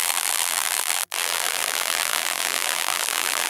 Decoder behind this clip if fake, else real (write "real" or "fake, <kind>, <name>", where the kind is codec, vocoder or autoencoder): fake, vocoder, BigVGAN v2